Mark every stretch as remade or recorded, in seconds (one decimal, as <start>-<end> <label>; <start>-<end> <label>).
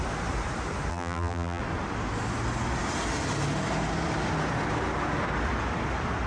0.0-0.9 recorded; 0.9-1.6 remade; 1.6-6.3 recorded